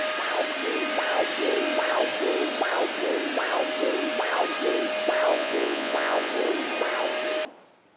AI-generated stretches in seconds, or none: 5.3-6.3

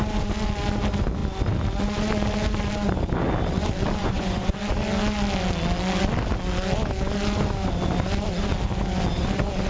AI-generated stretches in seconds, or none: 4.0-4.5

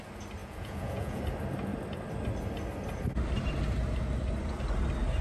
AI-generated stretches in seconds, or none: 0.4-1.2

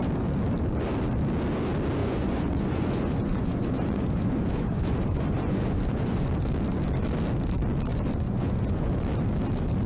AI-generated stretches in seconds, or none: 2.0-6.3; 7.9-8.9